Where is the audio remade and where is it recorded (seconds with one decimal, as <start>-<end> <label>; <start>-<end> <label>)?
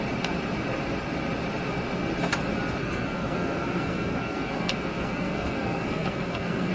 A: 0.0-2.8 recorded; 2.8-6.7 remade